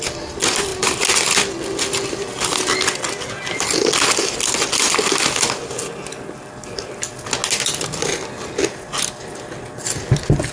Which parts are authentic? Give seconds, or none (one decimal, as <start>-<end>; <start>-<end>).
0.0-10.5

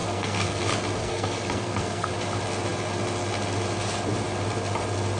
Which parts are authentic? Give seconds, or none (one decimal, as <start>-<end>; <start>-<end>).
0.6-1.0; 2.1-5.2

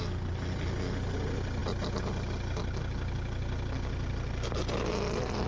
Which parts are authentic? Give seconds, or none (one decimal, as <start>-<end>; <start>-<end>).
0.0-5.5

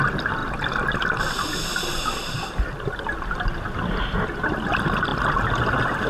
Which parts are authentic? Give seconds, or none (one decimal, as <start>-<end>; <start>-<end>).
0.0-6.1

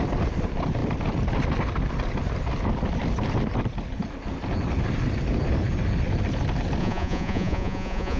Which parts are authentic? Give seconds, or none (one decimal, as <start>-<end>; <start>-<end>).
0.0-6.8

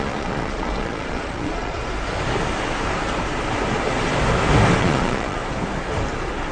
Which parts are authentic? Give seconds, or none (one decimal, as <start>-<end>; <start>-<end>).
1.8-4.8; 5.4-6.5

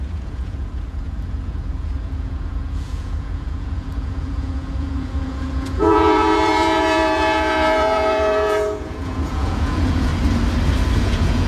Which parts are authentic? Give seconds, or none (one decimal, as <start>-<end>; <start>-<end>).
10.1-11.0

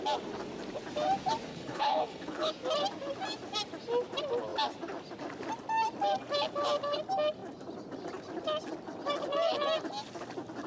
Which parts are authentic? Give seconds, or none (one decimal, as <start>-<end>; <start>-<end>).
0.0-1.5; 2.5-10.7